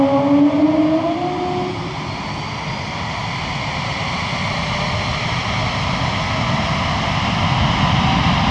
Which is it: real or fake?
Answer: real